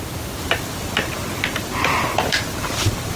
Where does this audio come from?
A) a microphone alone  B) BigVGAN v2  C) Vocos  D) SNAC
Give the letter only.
A